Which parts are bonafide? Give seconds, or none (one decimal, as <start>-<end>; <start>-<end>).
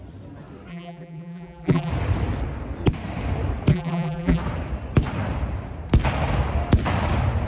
0.0-0.7; 1.9-3.7; 4.4-7.5